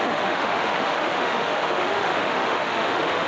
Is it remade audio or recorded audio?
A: remade